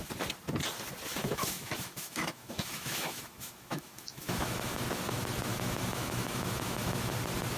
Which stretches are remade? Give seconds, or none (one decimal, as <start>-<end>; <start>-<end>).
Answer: 1.1-4.8; 5.5-7.1